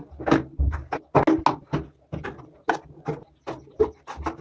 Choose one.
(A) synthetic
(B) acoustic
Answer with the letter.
B